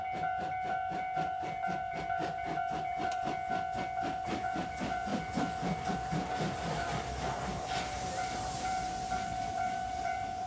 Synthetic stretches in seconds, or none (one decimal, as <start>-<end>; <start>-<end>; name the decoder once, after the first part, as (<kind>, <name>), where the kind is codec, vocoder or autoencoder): 0.0-3.2 (vocoder, BigVGAN v2); 4.0-5.1; 5.9-10.5